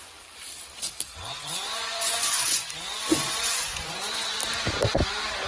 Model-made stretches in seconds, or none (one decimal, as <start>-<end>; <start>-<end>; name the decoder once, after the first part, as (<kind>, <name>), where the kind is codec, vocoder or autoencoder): 1.1-4.4 (vocoder, Vocos)